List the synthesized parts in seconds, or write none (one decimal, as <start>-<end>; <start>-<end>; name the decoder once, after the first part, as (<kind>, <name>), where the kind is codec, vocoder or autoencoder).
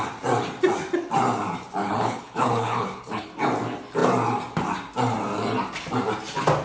1.8-3.3 (codec, HILCodec)